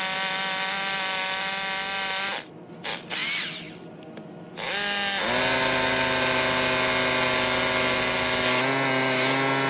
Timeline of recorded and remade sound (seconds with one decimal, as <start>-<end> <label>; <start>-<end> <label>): 0.0-9.7 recorded

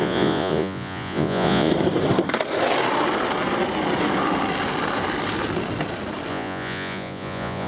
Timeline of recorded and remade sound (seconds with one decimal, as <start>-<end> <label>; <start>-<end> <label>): 0.0-1.7 remade; 1.7-6.3 recorded; 6.3-7.7 remade

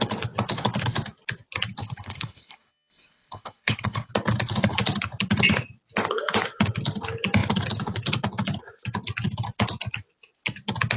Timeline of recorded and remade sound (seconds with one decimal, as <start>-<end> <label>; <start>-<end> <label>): 0.0-1.8 recorded; 1.8-4.1 remade; 4.1-11.0 recorded

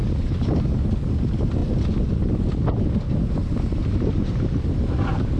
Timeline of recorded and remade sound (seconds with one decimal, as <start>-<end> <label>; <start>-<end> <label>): 0.0-5.4 recorded

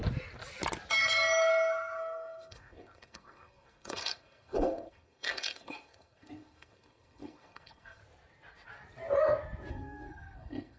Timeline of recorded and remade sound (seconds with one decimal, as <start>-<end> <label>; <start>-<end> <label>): 0.0-0.9 recorded; 0.9-8.0 remade; 8.0-9.7 recorded; 9.7-10.8 remade

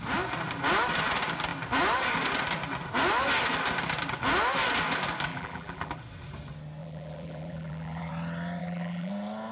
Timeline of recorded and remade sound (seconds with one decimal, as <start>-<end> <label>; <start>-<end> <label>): 0.0-5.3 recorded; 5.3-6.0 remade; 6.0-6.8 recorded; 6.8-8.1 remade; 8.1-8.6 recorded; 8.6-9.1 remade; 9.1-9.5 recorded

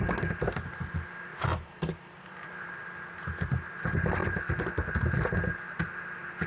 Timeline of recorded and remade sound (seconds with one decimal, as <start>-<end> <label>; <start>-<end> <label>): 0.0-1.3 recorded; 1.3-2.7 remade; 2.7-6.5 recorded

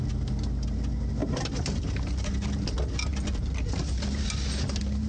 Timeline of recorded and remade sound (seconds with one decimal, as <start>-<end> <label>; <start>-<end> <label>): 0.0-1.2 recorded; 1.2-1.8 remade; 1.8-5.1 recorded